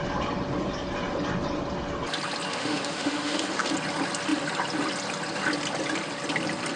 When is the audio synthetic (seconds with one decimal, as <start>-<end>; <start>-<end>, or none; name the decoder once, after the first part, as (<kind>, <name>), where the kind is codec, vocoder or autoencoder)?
2.5-3.7 (autoencoder, DAC-VAE)